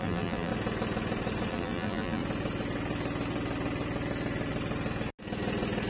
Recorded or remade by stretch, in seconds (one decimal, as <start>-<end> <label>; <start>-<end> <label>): 0.0-0.5 remade; 0.5-1.5 recorded; 1.5-2.2 remade; 2.2-5.9 recorded